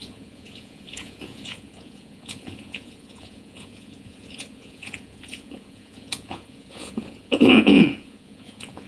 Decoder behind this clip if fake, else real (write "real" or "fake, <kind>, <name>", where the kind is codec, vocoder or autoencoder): fake, vocoder, Vocos